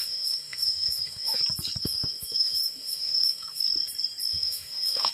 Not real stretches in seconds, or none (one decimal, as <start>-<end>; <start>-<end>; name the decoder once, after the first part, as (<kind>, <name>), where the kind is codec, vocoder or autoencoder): 0.0-1.4 (autoencoder, DAC-VAE); 1.8-3.6; 4.3-5.1